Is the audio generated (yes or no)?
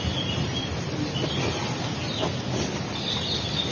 no